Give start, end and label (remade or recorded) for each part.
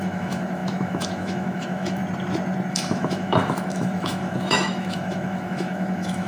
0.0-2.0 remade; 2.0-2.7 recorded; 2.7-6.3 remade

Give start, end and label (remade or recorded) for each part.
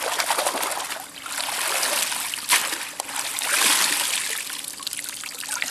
0.0-5.7 recorded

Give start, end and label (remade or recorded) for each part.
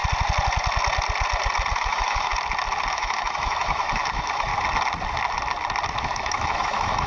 0.0-1.7 recorded; 1.7-2.3 remade; 2.3-2.9 recorded; 2.9-4.5 remade; 4.5-6.0 recorded; 6.0-7.1 remade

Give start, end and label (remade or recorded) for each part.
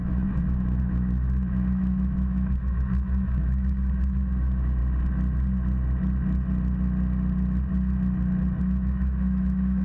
0.0-4.8 remade; 4.8-8.6 recorded; 8.6-9.8 remade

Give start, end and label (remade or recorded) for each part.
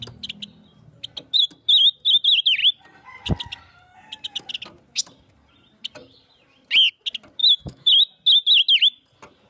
0.0-7.4 recorded; 7.4-7.9 remade; 7.9-9.5 recorded